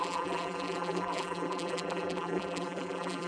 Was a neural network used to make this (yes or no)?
yes